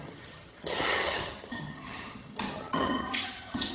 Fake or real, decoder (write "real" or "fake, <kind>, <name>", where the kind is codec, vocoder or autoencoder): fake, vocoder, HiFi-GAN